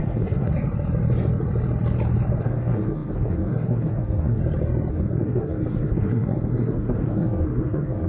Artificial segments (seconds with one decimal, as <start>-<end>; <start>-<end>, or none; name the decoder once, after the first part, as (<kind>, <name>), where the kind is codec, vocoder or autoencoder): 0.0-0.5 (codec, SNAC); 2.4-4.4; 4.9-8.1